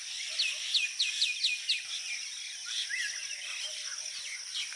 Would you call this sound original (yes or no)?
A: yes